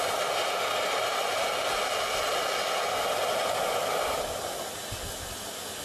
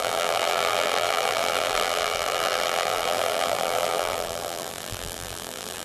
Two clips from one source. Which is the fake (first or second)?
second